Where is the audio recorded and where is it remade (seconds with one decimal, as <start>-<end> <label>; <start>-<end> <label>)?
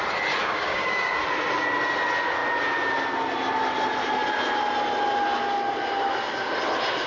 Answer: 0.0-0.4 recorded; 0.4-1.2 remade; 1.2-7.1 recorded